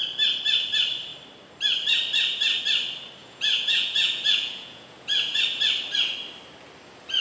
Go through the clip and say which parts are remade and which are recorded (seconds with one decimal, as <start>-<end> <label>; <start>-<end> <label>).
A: 0.0-3.2 recorded; 3.2-5.4 remade; 5.4-7.2 recorded